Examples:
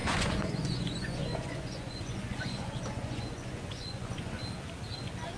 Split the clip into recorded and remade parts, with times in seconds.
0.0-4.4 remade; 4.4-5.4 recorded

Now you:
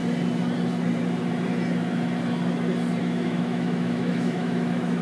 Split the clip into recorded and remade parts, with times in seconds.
0.0-3.0 recorded; 3.0-5.0 remade

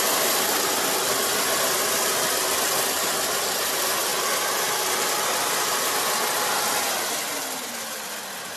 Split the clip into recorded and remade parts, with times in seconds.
0.0-8.6 recorded

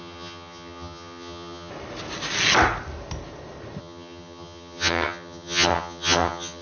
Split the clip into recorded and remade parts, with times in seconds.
0.0-1.7 remade; 1.7-3.8 recorded; 3.8-6.6 remade